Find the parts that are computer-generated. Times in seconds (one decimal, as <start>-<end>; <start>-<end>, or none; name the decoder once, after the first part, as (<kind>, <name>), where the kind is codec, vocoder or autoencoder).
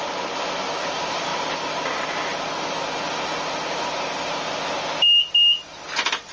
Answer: none